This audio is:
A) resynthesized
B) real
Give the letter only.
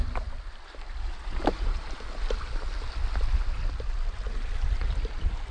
B